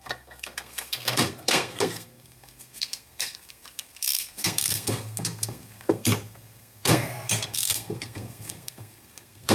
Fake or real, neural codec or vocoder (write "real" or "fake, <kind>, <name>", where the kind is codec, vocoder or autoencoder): fake, codec, SNAC